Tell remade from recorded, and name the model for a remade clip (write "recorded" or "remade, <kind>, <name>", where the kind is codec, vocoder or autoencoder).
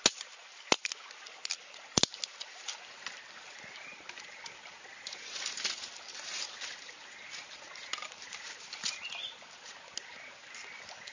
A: recorded